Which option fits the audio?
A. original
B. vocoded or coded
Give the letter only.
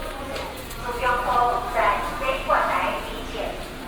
B